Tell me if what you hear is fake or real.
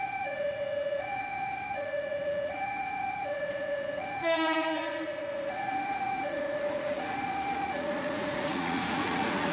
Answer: fake